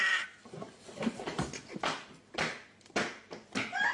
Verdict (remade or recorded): recorded